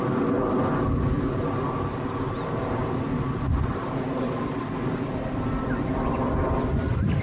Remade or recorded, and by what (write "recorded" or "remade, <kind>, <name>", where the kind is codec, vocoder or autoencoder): recorded